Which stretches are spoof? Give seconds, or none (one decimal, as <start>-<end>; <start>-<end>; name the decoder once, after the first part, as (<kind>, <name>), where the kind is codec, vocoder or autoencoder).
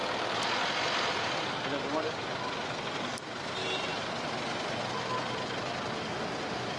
none